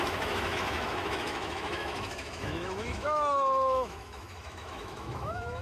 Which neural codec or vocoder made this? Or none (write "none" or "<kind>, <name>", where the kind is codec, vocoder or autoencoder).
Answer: autoencoder, DAC-VAE